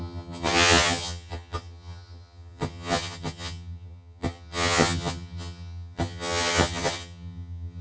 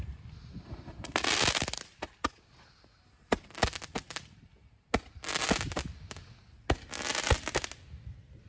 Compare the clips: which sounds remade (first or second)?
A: first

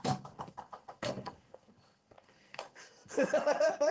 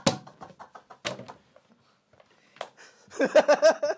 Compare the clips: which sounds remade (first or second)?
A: first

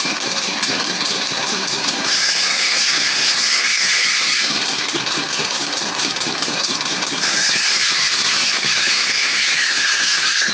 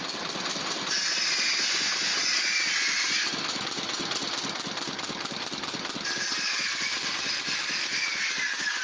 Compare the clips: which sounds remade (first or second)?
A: first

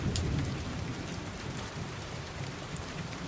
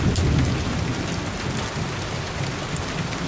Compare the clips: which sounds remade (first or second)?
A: first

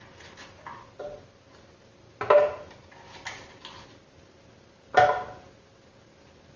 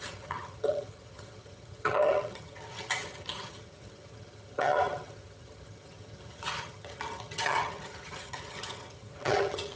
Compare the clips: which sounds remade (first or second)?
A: second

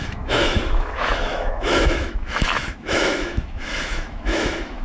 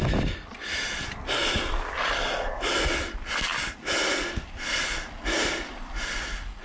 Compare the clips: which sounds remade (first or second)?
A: first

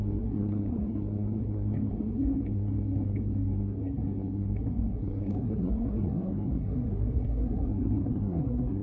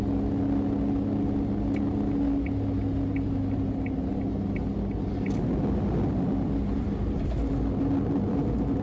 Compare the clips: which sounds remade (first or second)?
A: first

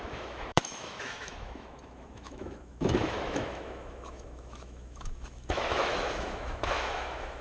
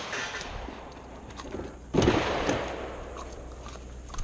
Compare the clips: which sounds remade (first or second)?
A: first